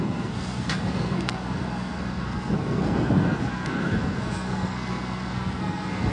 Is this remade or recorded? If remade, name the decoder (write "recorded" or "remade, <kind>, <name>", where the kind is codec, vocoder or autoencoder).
remade, codec, SNAC